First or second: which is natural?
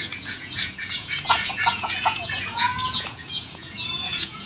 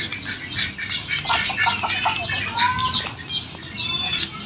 second